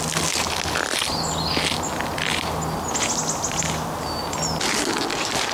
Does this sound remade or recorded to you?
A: recorded